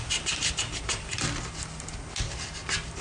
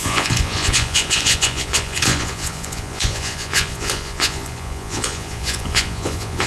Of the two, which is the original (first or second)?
first